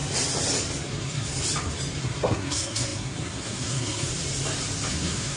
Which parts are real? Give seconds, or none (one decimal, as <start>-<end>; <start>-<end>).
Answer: 0.0-0.9; 1.3-2.0; 4.1-4.9